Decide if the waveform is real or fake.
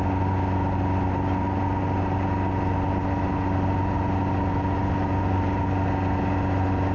real